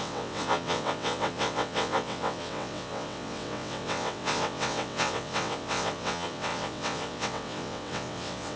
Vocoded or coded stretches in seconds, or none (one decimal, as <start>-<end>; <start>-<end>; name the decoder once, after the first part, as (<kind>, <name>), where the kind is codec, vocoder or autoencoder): 0.0-8.6 (vocoder, WaveNeXt)